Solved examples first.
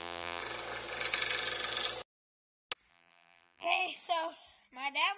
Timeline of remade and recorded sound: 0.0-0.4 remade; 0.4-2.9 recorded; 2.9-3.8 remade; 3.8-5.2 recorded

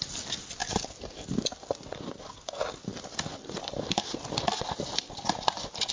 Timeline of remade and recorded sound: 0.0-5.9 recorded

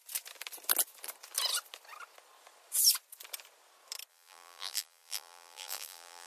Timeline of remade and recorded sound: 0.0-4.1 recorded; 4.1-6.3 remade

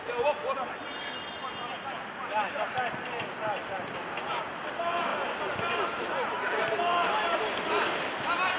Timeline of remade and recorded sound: 0.0-8.6 recorded